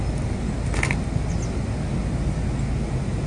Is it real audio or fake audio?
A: real